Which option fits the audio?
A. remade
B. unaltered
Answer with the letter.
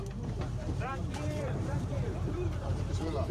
A